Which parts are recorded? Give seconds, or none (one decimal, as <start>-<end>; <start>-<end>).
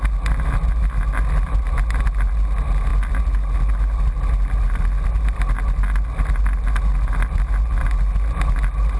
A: 0.0-9.0